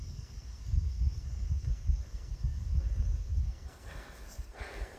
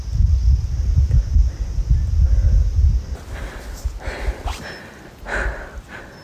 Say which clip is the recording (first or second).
second